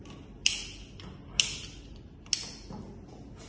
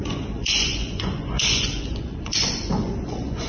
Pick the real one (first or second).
first